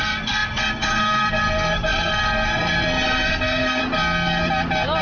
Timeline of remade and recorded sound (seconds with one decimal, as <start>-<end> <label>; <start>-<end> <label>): 0.0-3.8 remade; 3.8-5.0 recorded